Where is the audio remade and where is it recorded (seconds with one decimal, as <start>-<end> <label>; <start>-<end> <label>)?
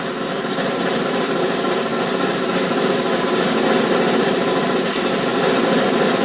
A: 0.0-1.9 remade; 1.9-4.2 recorded; 4.2-5.3 remade; 5.3-6.2 recorded